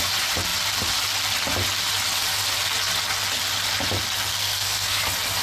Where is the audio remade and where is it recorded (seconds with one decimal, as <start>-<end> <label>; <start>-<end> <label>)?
0.0-4.3 recorded; 4.3-5.0 remade; 5.0-5.4 recorded